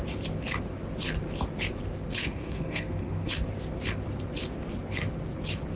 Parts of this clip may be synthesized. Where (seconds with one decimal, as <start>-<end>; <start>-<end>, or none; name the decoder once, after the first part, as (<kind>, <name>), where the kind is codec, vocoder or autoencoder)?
2.2-3.3 (codec, SNAC)